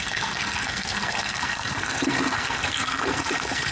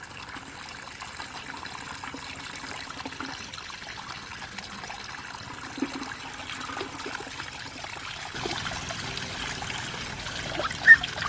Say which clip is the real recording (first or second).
second